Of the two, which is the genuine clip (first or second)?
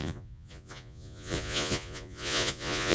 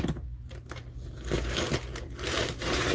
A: second